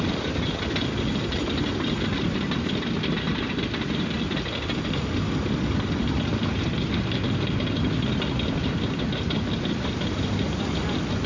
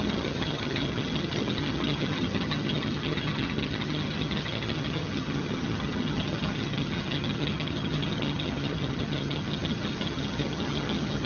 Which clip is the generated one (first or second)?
second